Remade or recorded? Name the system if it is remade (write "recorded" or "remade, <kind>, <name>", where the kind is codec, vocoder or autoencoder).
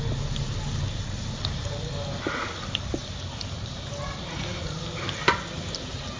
recorded